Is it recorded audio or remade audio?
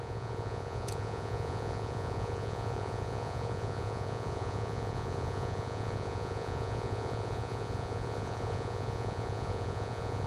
remade